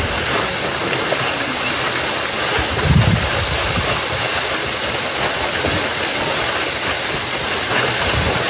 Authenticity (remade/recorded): recorded